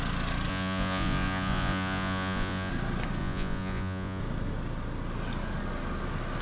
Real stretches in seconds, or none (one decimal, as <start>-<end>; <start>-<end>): 0.0-0.5; 2.7-3.2; 4.2-6.4